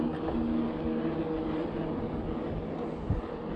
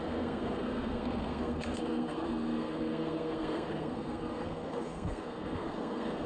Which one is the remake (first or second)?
second